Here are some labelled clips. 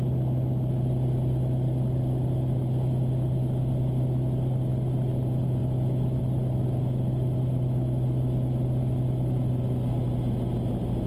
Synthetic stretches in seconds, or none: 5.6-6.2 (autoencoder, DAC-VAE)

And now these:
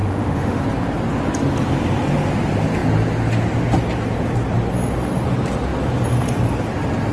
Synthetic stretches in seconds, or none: 0.0-0.6 (autoencoder, DAC-VAE)

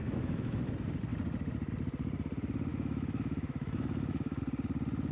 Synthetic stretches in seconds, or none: 0.0-0.7 (autoencoder, DAC-VAE); 2.7-4.4

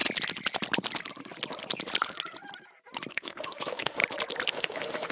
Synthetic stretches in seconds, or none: 3.1-4.0 (autoencoder, DAC-VAE); 4.5-5.1

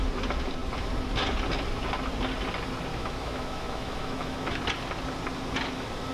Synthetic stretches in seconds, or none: 2.9-4.6 (autoencoder, DAC-VAE)

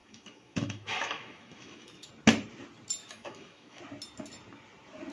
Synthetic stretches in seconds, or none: 0.0-2.1 (autoencoder, DAC-VAE); 3.0-3.8

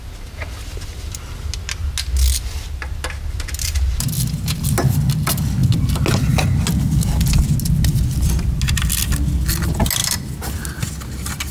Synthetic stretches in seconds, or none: none

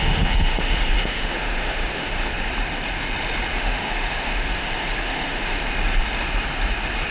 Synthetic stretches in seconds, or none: 0.0-2.3 (autoencoder, DAC-VAE); 3.5-5.6